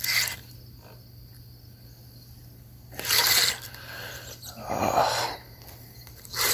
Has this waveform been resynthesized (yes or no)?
no